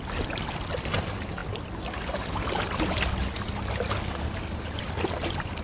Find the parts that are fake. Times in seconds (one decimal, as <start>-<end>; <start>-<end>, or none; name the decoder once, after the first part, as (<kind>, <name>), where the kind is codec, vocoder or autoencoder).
none

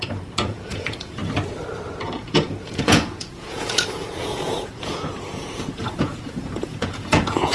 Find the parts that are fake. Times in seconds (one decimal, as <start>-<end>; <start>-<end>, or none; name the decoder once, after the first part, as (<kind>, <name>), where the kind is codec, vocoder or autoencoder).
0.0-1.2 (vocoder, Vocos); 2.2-7.5